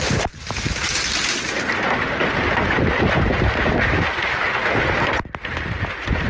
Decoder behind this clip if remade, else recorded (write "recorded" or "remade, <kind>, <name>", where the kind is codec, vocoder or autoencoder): recorded